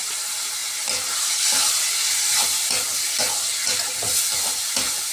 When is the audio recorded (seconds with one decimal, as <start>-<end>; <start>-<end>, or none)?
0.0-5.1